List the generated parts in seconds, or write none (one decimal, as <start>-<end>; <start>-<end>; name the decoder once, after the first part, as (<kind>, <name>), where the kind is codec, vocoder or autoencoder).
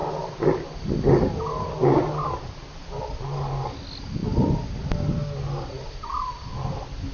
none